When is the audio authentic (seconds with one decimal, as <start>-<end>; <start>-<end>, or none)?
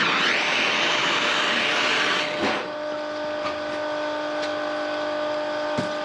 0.0-1.0; 1.6-6.0